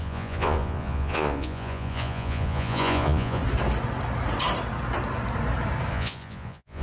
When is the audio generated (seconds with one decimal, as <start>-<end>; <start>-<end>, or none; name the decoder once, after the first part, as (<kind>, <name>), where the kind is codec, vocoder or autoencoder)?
0.0-3.4 (vocoder, Vocos); 5.9-6.8